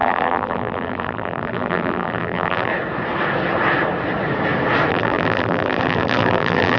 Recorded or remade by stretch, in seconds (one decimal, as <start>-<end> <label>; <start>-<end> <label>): 0.0-2.7 remade; 2.7-4.9 recorded; 4.9-6.8 remade